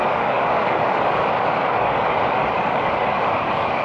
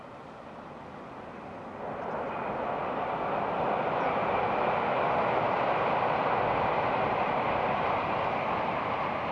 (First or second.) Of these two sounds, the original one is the second